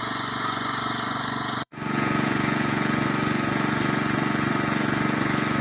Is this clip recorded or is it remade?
remade